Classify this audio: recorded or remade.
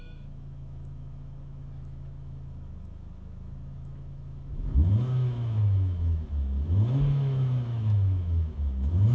remade